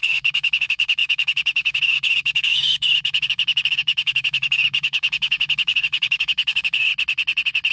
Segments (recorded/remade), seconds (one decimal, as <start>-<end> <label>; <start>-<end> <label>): 0.0-6.9 remade; 6.9-7.7 recorded